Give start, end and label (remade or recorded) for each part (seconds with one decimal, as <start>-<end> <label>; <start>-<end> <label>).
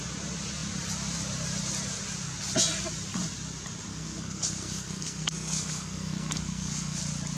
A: 0.0-3.9 recorded; 3.9-7.0 remade; 7.0-7.4 recorded